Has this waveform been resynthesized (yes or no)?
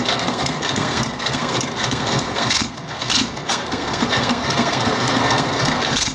yes